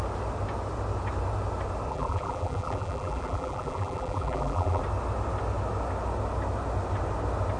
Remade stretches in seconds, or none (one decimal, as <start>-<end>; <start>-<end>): 1.9-4.8